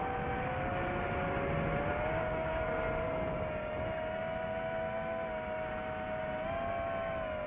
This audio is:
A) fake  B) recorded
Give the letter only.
B